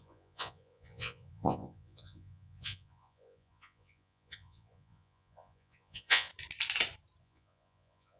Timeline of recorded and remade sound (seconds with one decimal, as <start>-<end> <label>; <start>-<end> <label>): 0.0-6.3 remade; 6.3-7.2 recorded; 7.2-8.2 remade